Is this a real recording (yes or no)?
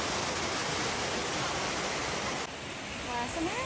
yes